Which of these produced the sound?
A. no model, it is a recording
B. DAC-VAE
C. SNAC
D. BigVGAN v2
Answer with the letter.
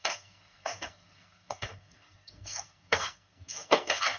C